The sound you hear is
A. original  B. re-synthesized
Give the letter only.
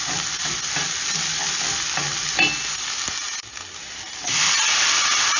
A